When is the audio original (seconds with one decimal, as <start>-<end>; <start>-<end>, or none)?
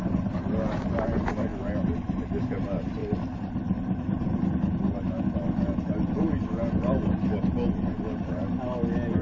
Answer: 0.0-9.2